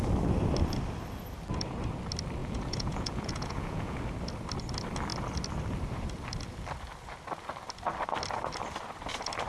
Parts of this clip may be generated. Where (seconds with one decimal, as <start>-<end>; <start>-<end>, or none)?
2.4-4.0